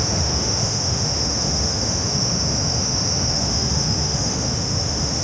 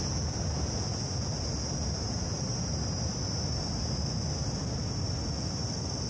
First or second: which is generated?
first